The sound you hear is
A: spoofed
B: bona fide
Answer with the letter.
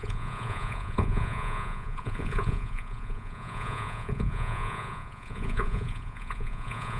A